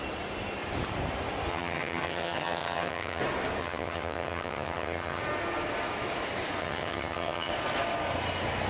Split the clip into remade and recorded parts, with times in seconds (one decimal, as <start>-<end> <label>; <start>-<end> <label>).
0.0-1.5 recorded; 1.5-3.2 remade; 3.2-3.6 recorded; 3.6-5.2 remade; 5.2-6.6 recorded; 6.6-7.5 remade; 7.5-8.7 recorded